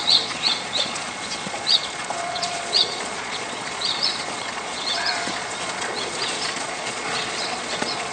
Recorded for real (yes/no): no